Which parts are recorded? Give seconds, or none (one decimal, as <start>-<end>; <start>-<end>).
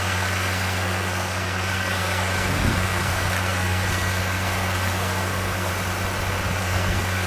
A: 5.7-6.6